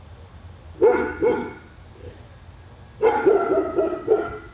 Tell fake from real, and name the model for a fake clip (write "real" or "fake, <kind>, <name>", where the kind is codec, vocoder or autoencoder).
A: real